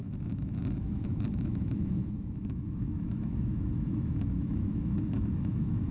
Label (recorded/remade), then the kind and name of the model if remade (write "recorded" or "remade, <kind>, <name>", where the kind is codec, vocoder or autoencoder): remade, autoencoder, DAC-VAE